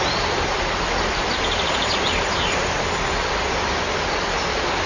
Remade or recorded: remade